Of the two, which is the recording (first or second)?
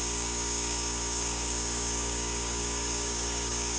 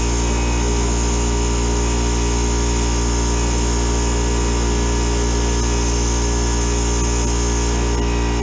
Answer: second